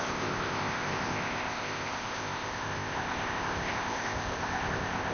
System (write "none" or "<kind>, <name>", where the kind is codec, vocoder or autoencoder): codec, ZipCodec